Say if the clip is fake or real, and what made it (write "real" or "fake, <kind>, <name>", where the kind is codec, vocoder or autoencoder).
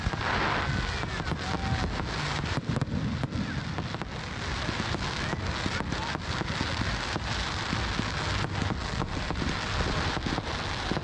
real